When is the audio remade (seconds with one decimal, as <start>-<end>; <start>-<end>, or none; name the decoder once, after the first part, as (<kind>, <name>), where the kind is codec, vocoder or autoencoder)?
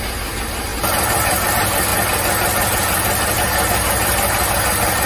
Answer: 0.0-0.7 (vocoder, BigVGAN v2); 1.5-1.9